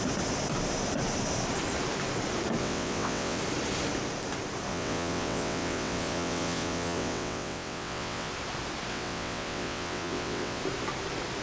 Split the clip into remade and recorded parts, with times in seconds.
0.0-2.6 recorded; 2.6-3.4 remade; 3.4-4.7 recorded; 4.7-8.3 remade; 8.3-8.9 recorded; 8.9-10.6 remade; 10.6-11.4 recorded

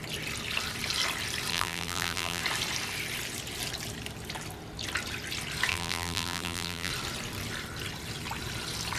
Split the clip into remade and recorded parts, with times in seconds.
0.0-1.5 recorded; 1.5-2.4 remade; 2.4-5.7 recorded; 5.7-6.9 remade; 6.9-9.0 recorded

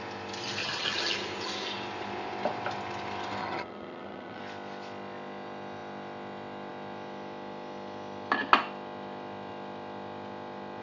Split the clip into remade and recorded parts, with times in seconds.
0.0-0.6 recorded; 0.6-1.2 remade; 1.2-3.4 recorded; 3.4-4.4 remade; 4.4-10.8 recorded

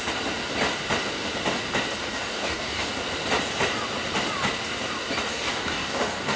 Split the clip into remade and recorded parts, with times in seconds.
0.0-2.1 recorded; 2.1-2.9 remade; 2.9-5.3 recorded; 5.3-6.4 remade

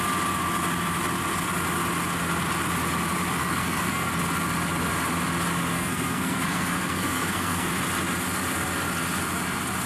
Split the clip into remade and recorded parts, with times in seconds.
0.0-3.4 recorded; 3.4-4.1 remade; 4.1-5.7 recorded; 5.7-7.7 remade; 7.7-9.9 recorded

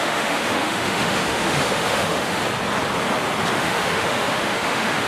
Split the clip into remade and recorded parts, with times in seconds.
0.0-2.4 remade; 2.4-3.5 recorded; 3.5-5.1 remade